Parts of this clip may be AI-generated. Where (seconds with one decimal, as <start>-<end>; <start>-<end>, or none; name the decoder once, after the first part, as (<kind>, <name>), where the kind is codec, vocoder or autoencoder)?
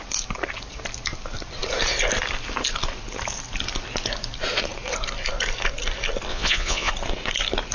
6.3-6.9 (vocoder, Vocos)